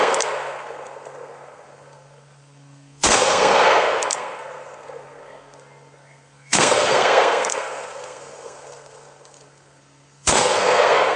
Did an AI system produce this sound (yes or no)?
yes